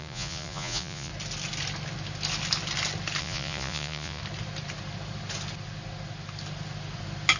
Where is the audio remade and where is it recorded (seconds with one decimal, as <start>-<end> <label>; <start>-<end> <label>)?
0.0-1.1 remade; 1.1-3.2 recorded; 3.2-4.2 remade; 4.2-7.4 recorded